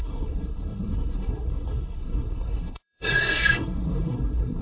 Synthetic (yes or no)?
yes